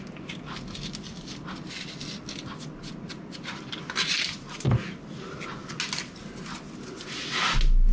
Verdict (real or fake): real